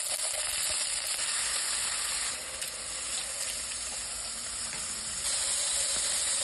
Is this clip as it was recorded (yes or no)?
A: yes